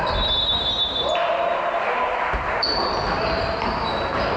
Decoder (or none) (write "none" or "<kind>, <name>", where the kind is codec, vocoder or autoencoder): vocoder, BigVGAN v2